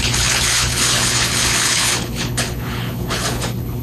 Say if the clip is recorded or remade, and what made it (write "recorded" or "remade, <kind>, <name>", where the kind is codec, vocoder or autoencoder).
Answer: remade, codec, HILCodec